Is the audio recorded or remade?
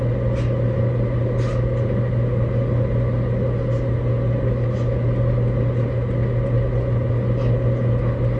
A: recorded